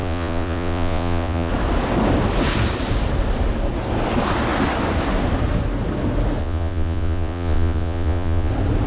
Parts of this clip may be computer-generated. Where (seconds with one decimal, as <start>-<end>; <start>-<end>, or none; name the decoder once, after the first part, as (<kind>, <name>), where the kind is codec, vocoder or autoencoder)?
0.0-1.5 (vocoder, Vocos); 6.4-8.5